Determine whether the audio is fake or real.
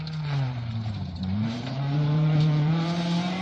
fake